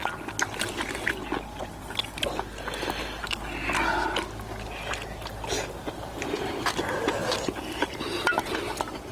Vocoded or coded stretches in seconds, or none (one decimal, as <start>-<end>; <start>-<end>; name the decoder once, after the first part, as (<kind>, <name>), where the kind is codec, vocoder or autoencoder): 0.7-1.2 (vocoder, BigVGAN v2); 5.9-9.1